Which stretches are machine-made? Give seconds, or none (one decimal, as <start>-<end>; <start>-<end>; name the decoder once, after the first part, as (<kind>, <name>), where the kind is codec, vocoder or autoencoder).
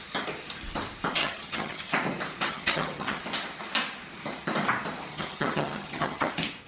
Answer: 1.2-1.9 (vocoder, HiFi-GAN); 2.5-3.2; 5.1-6.3